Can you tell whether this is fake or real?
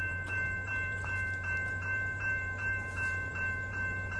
fake